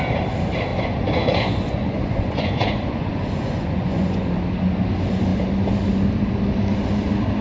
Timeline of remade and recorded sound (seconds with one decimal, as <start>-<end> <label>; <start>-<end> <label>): 0.0-0.7 recorded; 0.7-4.3 remade; 4.3-7.4 recorded